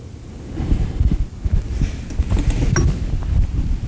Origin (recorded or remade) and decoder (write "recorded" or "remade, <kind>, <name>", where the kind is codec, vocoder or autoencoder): recorded